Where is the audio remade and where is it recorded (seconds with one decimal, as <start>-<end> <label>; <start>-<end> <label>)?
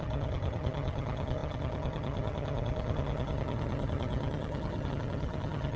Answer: 0.0-5.8 remade